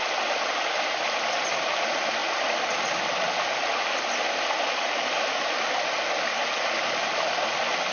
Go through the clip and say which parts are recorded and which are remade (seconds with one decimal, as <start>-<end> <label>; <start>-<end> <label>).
0.0-7.9 recorded